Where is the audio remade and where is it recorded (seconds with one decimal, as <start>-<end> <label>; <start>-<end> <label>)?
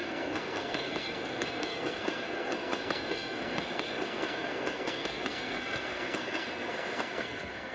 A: 0.0-7.7 remade